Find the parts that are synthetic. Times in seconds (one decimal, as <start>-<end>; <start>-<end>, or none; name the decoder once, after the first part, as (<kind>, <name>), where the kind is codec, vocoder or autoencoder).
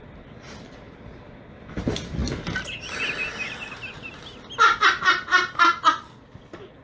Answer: none